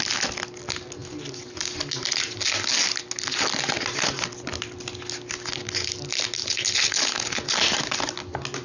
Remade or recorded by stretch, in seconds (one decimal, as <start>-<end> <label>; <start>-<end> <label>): 0.0-6.4 recorded; 6.4-7.4 remade; 7.4-8.6 recorded